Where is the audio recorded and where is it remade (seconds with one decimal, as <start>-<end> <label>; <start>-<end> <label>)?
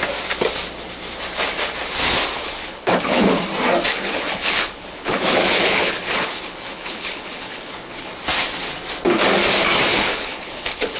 0.0-2.4 recorded; 2.4-3.4 remade; 3.4-3.9 recorded; 3.9-8.1 remade; 8.1-9.9 recorded; 9.9-11.0 remade